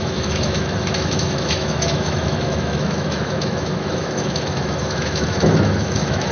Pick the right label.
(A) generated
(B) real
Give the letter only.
A